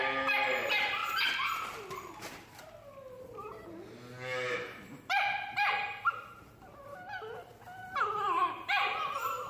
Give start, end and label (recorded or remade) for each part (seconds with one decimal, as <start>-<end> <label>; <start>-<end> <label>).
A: 0.0-7.5 remade; 7.5-8.0 recorded; 8.0-9.5 remade